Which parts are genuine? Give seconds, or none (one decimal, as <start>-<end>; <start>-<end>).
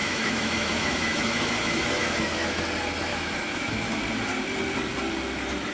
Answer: 2.6-3.1; 4.0-5.7